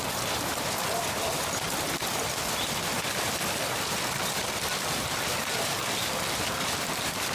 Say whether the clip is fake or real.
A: real